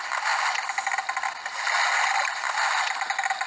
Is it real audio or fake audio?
real